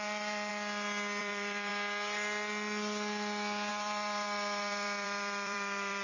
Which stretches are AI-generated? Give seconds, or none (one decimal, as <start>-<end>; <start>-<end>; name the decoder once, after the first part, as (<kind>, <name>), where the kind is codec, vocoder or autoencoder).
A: 0.0-0.5 (vocoder, BigVGAN v2); 1.2-1.7; 3.7-6.0